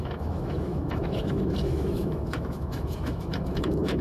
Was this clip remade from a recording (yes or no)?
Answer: yes